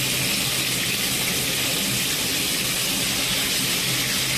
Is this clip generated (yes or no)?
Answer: no